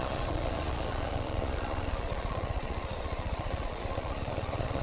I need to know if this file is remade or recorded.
remade